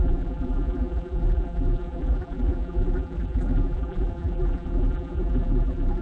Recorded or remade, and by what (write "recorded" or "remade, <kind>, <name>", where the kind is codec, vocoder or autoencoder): remade, vocoder, BigVGAN v2